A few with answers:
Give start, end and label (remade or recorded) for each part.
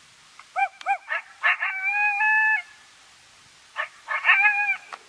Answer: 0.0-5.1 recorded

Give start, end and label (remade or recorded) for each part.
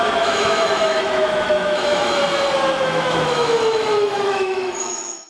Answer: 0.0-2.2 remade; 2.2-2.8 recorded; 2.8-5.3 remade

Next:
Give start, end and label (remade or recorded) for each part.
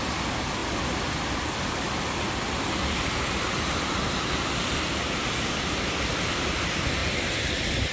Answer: 0.0-7.9 recorded